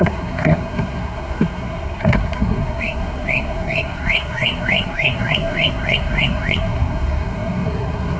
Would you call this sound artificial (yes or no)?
yes